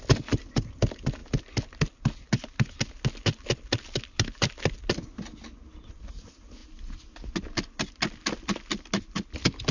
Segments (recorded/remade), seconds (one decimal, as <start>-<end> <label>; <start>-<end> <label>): 0.0-9.7 recorded